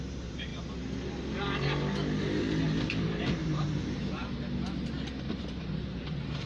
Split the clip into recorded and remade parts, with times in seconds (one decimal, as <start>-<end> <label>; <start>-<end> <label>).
0.0-0.5 remade; 0.5-2.2 recorded; 2.2-4.2 remade; 4.2-5.3 recorded; 5.3-6.5 remade